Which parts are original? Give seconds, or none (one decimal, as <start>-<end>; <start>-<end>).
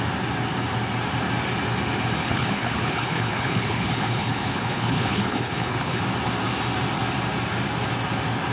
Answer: 0.0-2.2; 6.0-8.5